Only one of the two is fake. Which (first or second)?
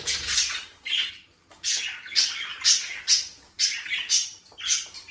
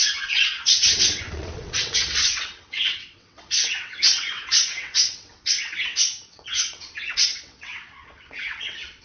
second